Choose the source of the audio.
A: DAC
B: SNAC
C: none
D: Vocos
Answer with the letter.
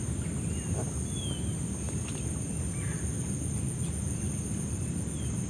C